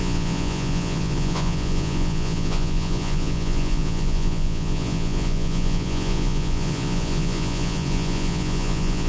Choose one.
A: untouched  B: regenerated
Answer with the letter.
B